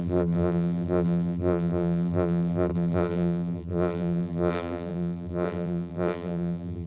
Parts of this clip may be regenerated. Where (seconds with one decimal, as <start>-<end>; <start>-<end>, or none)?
0.0-6.9